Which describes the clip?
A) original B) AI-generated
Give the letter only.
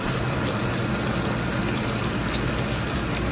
A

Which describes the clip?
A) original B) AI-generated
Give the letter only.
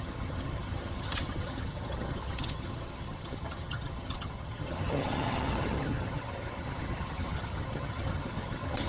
B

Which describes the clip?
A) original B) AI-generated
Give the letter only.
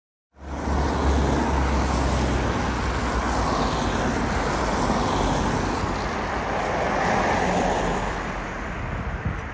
A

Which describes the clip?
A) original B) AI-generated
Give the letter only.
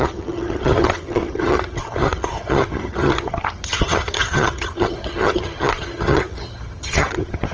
B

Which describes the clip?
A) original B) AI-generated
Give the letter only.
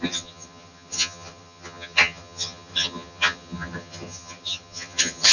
B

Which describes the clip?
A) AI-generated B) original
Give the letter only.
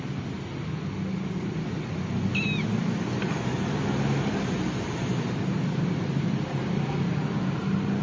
B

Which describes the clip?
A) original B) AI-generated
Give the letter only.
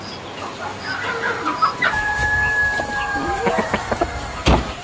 A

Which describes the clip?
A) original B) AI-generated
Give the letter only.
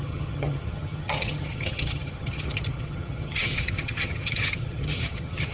B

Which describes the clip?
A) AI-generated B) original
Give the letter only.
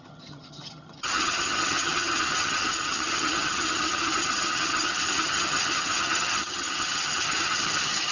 A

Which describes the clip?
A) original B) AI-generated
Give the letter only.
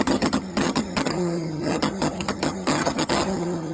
B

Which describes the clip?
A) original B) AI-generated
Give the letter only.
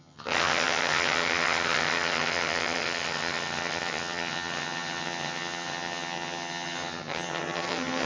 B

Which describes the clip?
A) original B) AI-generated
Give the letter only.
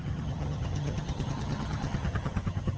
B